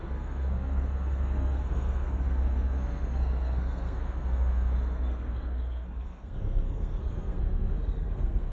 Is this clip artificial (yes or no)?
yes